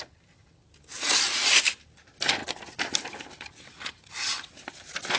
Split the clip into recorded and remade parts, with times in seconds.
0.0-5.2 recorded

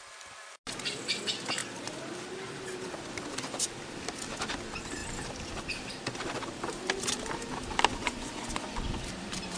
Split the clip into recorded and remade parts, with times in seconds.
0.0-7.9 recorded; 7.9-9.0 remade; 9.0-9.6 recorded

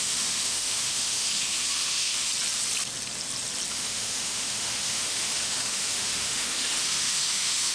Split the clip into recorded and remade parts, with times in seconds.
0.0-2.3 remade; 2.3-3.7 recorded; 3.7-7.7 remade

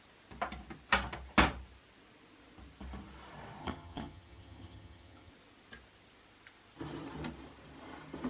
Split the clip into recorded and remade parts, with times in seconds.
0.0-3.6 recorded; 3.6-5.3 remade; 5.3-8.3 recorded

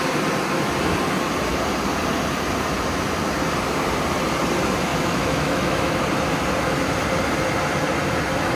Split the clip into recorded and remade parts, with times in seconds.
0.0-4.9 recorded; 4.9-6.0 remade; 6.0-8.6 recorded

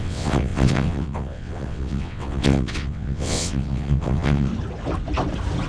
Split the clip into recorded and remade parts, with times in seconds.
0.0-4.5 remade; 4.5-5.7 recorded

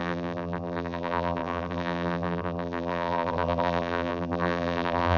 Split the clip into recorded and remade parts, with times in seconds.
0.0-5.2 remade